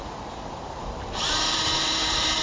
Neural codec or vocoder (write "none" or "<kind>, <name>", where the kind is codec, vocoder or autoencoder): vocoder, BigVGAN v2